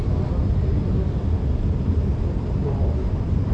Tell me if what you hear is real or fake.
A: real